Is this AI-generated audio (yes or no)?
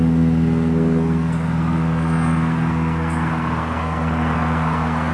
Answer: yes